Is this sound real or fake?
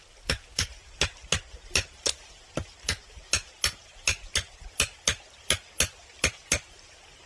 real